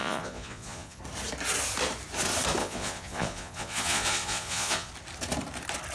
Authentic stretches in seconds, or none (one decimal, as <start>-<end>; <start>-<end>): 1.0-2.6; 4.9-5.9